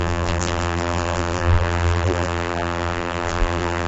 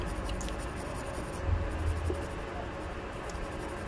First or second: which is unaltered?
second